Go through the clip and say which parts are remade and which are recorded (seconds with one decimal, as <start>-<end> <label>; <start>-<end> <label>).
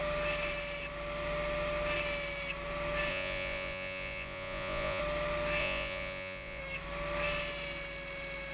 0.0-3.1 recorded; 3.1-5.0 remade; 5.0-5.6 recorded; 5.6-6.6 remade; 6.6-8.5 recorded